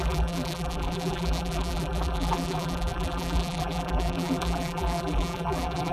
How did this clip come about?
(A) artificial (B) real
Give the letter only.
A